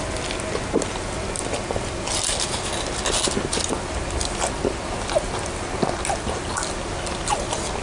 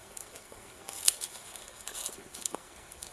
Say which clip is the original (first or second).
first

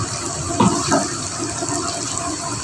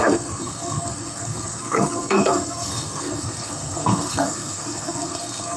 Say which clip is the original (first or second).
first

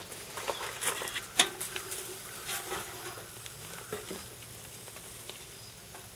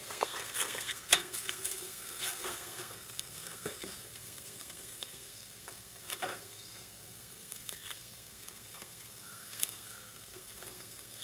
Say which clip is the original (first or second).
first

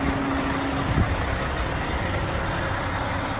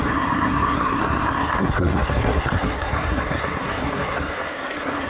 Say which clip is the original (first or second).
first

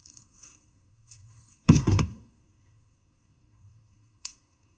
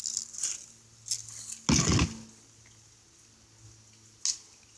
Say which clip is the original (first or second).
second